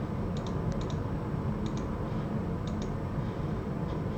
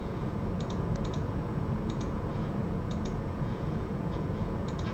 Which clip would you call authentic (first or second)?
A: first